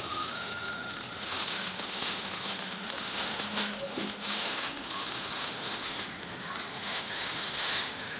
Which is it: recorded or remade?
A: remade